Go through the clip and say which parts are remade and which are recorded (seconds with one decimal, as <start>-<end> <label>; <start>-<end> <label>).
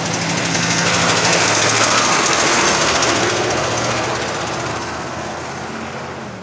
0.0-0.5 recorded; 0.5-4.1 remade; 4.1-4.7 recorded; 4.7-5.4 remade; 5.4-6.4 recorded